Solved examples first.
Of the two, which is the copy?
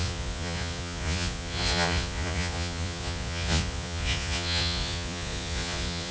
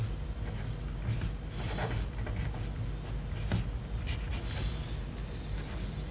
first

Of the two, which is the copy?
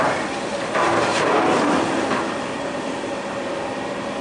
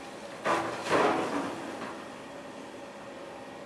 first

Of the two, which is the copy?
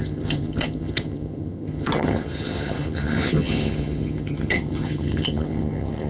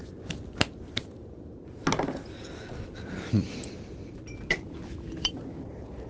first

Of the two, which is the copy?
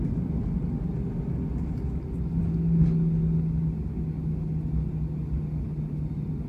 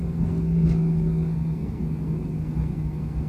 second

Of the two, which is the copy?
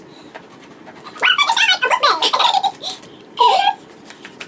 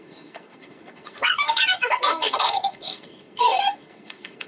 second